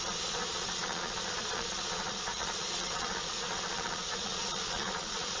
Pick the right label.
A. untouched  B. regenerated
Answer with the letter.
B